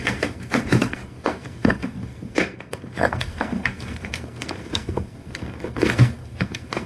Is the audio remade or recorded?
remade